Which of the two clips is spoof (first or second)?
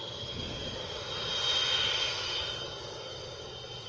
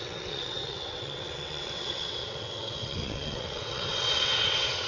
second